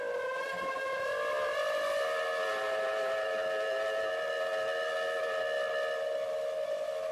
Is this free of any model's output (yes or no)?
yes